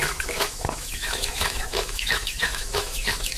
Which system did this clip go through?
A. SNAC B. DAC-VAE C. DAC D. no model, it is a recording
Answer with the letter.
B